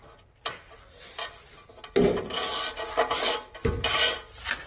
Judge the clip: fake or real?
real